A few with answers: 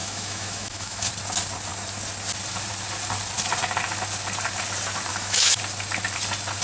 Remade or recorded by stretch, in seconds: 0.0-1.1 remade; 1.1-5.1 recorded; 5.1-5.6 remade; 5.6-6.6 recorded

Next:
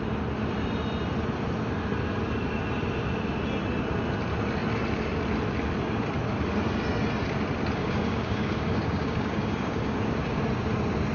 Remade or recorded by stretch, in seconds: 0.0-7.8 recorded; 7.8-10.4 remade; 10.4-11.1 recorded

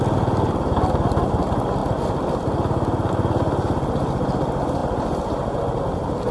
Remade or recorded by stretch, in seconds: 0.0-6.3 recorded

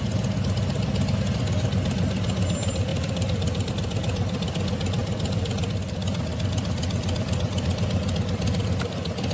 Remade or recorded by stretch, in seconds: 0.0-2.9 recorded; 2.9-3.7 remade; 3.7-9.3 recorded

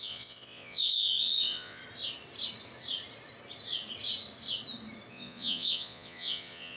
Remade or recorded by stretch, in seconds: 0.0-1.8 remade; 1.8-5.1 recorded; 5.1-6.8 remade

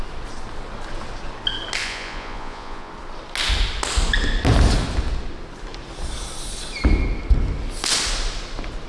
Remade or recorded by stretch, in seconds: 0.0-1.8 recorded; 1.8-2.9 remade; 2.9-8.9 recorded

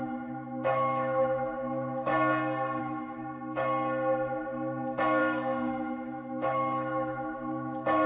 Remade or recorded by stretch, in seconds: 0.0-2.1 remade; 2.1-2.8 recorded; 2.8-3.2 remade; 3.2-5.2 recorded; 5.2-8.1 remade